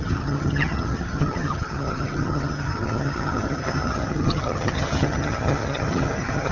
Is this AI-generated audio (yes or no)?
yes